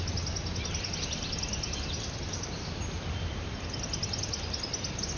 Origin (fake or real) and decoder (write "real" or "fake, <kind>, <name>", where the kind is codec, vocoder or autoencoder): real